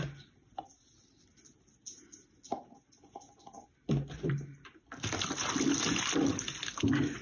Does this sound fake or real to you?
real